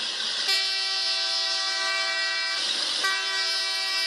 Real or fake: real